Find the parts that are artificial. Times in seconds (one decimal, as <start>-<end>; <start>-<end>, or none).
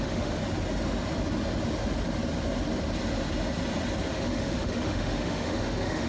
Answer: 0.0-0.4; 4.1-6.1